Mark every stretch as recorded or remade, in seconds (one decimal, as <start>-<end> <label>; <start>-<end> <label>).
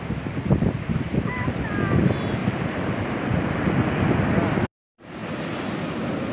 0.0-2.4 recorded; 2.4-3.6 remade; 3.6-6.3 recorded